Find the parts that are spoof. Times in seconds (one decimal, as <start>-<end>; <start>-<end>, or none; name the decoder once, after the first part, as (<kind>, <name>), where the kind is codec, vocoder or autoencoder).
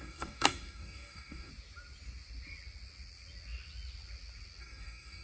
0.0-1.5 (codec, DAC); 4.6-5.2